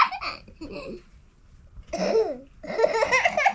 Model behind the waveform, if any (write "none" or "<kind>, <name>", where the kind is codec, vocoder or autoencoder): none